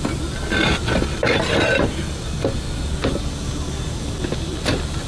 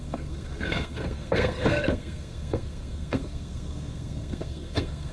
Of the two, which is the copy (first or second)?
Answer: second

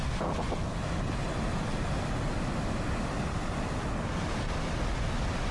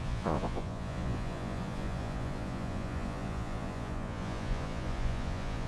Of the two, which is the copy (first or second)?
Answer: second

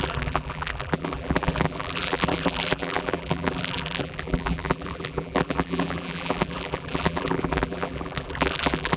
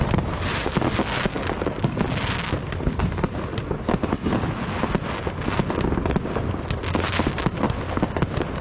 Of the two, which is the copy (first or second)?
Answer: first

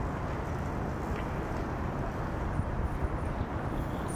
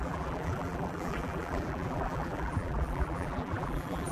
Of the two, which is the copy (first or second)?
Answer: second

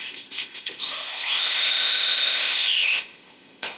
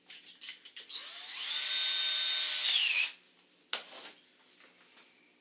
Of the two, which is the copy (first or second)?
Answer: first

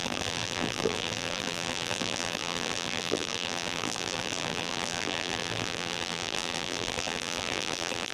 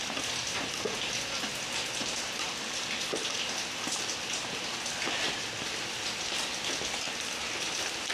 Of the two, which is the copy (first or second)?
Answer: first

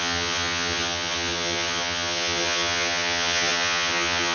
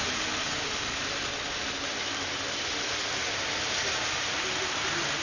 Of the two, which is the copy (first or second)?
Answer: first